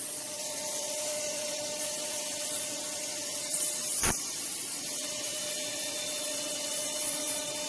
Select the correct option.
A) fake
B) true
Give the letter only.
A